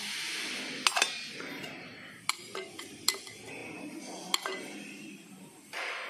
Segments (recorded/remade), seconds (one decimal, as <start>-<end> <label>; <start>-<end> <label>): 0.0-6.1 recorded